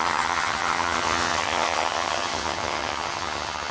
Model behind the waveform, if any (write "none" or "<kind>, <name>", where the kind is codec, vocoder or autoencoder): vocoder, HiFi-GAN